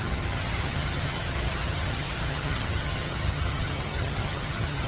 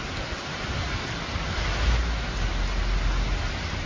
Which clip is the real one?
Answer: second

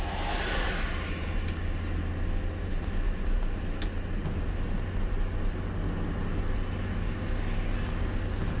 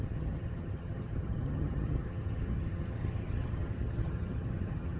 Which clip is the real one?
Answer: first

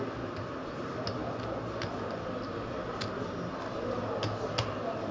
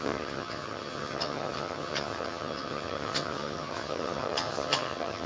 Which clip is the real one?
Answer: first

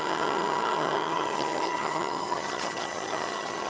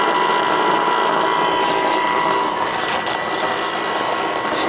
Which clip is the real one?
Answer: second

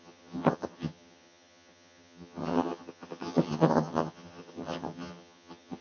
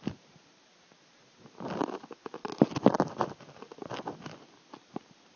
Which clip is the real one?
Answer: second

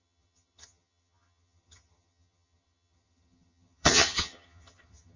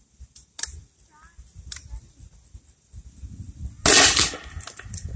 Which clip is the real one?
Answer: second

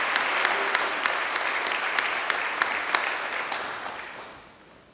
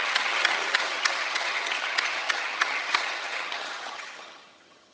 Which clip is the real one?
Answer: first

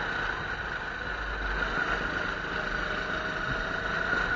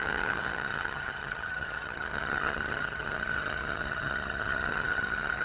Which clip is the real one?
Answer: first